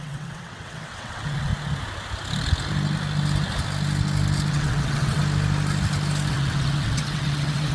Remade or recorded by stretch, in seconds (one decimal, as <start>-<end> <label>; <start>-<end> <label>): 0.0-1.5 remade; 1.5-4.5 recorded; 4.5-5.2 remade; 5.2-6.3 recorded; 6.3-7.7 remade